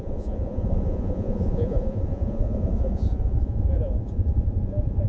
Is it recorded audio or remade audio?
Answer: remade